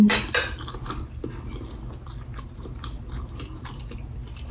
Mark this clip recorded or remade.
recorded